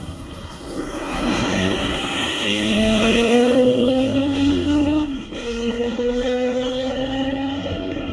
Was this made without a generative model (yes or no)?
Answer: no